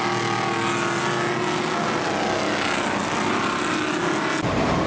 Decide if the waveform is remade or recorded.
recorded